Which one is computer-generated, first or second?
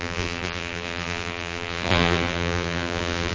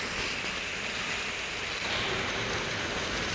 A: first